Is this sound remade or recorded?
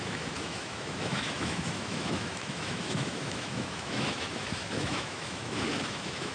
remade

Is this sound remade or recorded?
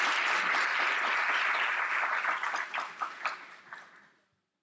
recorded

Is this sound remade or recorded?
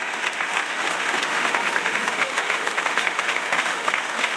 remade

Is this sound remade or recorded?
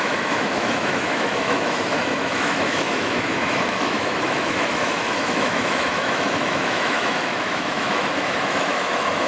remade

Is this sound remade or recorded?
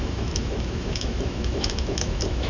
remade